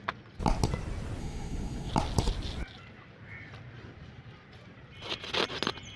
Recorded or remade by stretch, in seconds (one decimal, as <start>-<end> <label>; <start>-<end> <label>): 0.0-1.2 recorded; 1.2-1.9 remade; 1.9-6.0 recorded